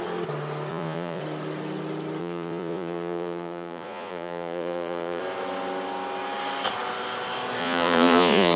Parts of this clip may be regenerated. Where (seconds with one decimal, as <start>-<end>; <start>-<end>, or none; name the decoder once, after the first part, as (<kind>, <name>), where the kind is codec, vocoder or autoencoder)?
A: 0.7-1.2 (vocoder, Vocos); 2.2-5.2; 7.6-8.6